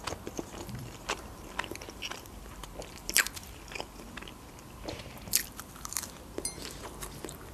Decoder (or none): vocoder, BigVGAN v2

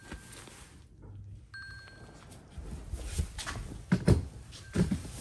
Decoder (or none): none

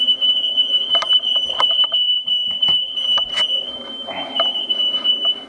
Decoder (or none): vocoder, BigVGAN v2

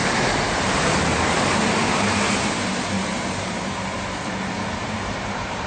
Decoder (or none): vocoder, BigVGAN v2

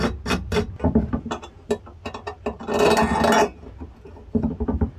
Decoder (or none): none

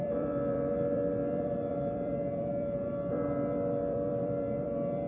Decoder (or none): vocoder, BigVGAN v2